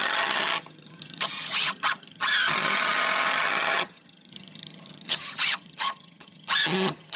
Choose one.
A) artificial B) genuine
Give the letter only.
A